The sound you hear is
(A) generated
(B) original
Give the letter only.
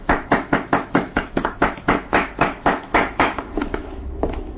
A